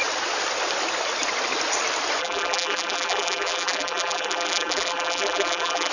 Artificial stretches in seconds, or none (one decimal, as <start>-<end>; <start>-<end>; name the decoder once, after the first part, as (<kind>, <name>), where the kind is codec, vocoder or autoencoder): 2.2-5.9 (vocoder, BigVGAN v2)

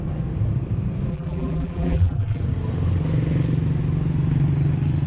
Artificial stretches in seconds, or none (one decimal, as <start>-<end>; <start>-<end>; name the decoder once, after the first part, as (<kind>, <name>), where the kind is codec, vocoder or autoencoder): 1.1-2.4 (vocoder, BigVGAN v2)

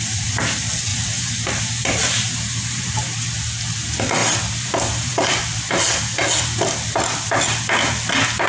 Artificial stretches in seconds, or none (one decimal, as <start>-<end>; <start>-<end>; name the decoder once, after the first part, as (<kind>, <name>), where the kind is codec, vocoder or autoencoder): 0.9-3.3 (vocoder, BigVGAN v2); 4.2-5.1

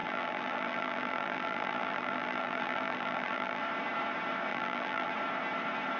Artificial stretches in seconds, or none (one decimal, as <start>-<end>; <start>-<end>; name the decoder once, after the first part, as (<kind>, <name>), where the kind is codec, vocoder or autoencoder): 0.0-3.6 (vocoder, BigVGAN v2); 4.5-5.1

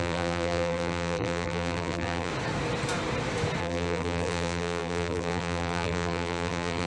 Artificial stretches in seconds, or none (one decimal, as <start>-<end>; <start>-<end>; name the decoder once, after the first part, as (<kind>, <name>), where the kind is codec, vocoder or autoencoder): 0.0-2.3 (vocoder, BigVGAN v2); 3.6-6.9